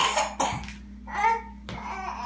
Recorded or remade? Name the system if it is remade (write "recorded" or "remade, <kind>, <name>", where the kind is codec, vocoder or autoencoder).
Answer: recorded